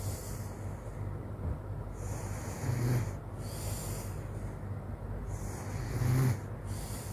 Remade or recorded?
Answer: recorded